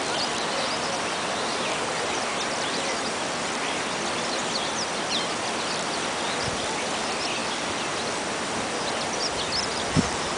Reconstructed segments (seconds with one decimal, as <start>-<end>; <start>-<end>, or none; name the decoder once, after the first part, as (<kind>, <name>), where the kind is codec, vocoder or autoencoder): none